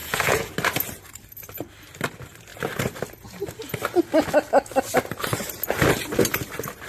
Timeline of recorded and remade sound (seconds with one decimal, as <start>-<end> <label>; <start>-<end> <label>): 0.0-0.5 remade; 0.5-6.9 recorded